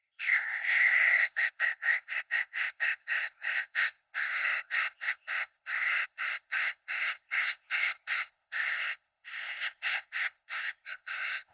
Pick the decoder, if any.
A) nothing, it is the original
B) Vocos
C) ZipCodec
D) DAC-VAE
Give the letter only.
C